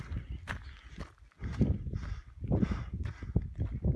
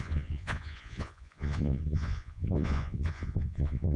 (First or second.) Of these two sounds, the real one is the first